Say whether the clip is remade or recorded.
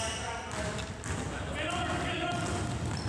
recorded